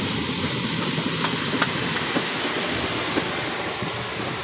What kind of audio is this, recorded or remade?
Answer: recorded